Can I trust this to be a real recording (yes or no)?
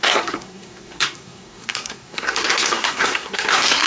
no